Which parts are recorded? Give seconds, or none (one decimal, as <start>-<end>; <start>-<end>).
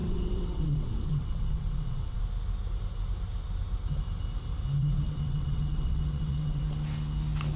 2.2-4.8; 6.6-7.6